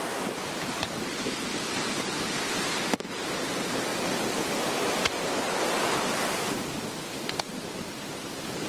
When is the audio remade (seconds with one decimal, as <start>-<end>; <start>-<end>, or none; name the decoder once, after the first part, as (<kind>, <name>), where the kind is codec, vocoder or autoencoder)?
none